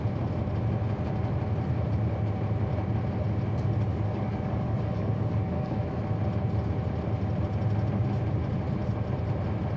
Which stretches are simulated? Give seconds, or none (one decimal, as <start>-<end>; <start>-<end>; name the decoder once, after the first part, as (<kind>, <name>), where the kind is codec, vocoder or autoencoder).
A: 3.9-6.0 (codec, DAC)